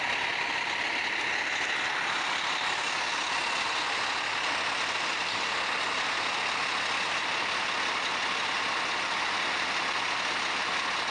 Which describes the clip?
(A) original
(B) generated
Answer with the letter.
A